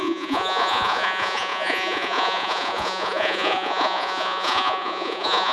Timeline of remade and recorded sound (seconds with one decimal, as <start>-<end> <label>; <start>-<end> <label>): 0.0-5.5 remade